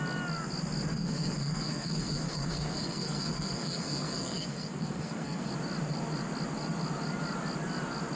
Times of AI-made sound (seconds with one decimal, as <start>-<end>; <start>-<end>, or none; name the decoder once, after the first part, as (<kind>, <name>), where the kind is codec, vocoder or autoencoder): 0.9-5.5 (codec, SNAC)

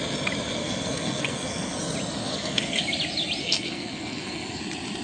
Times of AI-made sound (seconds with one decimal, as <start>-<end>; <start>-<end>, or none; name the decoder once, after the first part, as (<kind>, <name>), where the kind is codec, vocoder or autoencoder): 0.6-1.8 (codec, SNAC); 2.2-2.8; 3.4-4.6

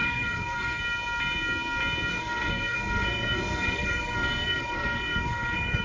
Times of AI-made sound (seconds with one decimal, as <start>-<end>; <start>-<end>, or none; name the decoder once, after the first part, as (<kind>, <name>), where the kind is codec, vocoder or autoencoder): 0.0-0.8 (codec, SNAC); 2.1-5.8

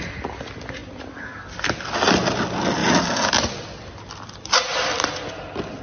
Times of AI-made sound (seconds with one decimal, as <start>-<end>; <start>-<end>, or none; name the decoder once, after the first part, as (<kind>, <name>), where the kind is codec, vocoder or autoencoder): none

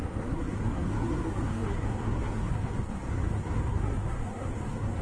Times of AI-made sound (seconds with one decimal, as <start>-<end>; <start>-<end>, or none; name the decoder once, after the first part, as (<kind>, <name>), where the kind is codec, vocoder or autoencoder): 0.0-5.0 (codec, SNAC)

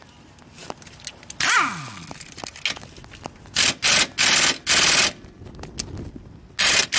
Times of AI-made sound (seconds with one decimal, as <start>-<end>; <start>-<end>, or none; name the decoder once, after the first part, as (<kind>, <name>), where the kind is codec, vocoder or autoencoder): none

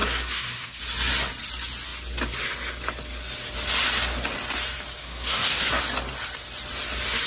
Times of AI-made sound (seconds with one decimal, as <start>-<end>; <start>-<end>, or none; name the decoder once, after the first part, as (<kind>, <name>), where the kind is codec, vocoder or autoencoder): 0.0-0.8 (codec, SNAC); 5.0-5.8